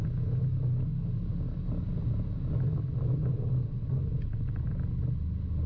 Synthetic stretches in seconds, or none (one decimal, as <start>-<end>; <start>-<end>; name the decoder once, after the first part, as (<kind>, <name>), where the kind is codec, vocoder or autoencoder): none